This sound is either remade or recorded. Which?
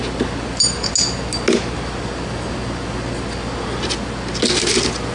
recorded